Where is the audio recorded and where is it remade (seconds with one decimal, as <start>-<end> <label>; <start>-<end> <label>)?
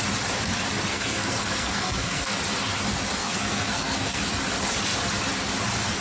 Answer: 0.0-0.9 recorded; 0.9-2.4 remade; 2.4-3.2 recorded; 3.2-4.2 remade; 4.2-6.0 recorded